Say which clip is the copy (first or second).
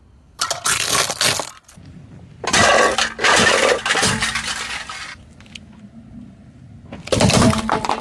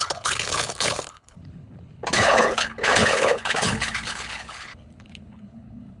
second